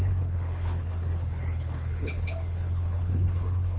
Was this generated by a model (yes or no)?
yes